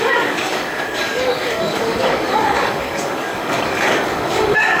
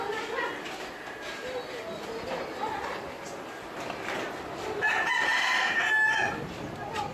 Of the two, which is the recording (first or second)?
second